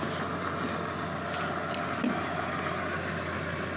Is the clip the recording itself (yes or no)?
yes